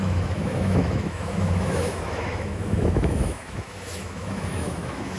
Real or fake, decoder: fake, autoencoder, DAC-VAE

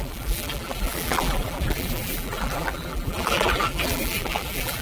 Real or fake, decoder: fake, vocoder, BigVGAN v2